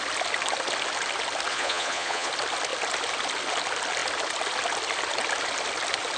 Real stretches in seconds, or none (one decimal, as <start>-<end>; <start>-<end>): 0.0-1.5; 2.3-6.2